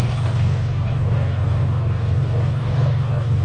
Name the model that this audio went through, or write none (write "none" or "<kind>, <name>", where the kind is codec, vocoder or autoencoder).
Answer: codec, DAC